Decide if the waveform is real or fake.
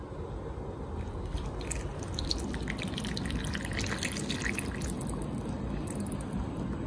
real